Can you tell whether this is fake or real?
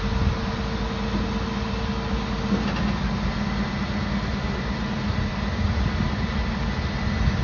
real